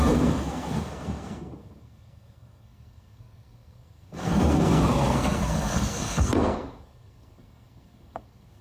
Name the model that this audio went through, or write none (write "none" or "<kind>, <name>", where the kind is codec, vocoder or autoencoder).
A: codec, SNAC